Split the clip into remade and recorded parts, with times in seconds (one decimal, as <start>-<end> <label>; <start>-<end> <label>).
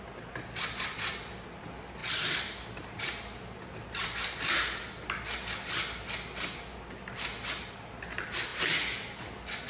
0.0-9.7 recorded